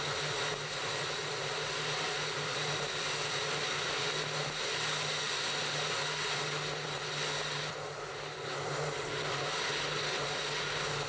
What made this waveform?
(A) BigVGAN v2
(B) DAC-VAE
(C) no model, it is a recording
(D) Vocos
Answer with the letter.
C